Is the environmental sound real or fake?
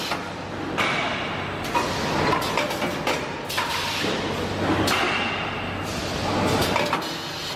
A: real